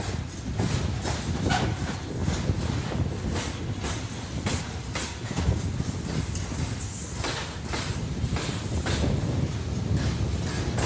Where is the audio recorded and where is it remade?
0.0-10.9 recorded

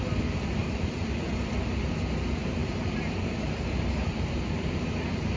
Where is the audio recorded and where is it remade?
0.0-0.6 recorded; 0.6-1.3 remade; 1.3-2.6 recorded; 2.6-5.4 remade

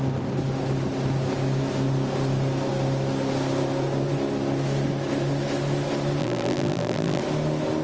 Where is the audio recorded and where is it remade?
0.0-6.2 recorded; 6.2-7.2 remade; 7.2-7.8 recorded

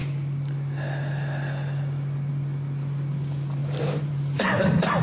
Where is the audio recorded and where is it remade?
0.0-3.6 recorded; 3.6-4.2 remade; 4.2-5.0 recorded

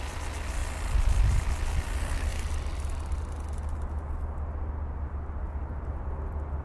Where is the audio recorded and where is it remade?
0.0-6.6 recorded